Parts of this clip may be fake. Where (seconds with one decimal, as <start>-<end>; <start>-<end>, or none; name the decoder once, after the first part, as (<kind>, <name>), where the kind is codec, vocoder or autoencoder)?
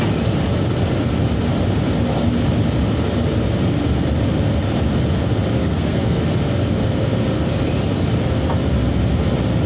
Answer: 5.6-6.2 (codec, SNAC)